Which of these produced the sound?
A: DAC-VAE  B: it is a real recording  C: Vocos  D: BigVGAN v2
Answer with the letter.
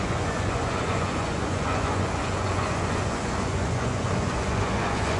C